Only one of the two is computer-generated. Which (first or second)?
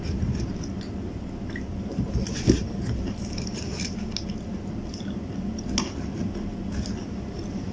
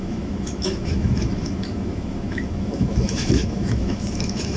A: second